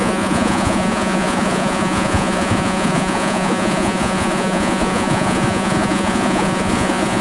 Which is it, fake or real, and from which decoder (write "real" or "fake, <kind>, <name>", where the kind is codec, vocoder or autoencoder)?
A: fake, vocoder, Vocos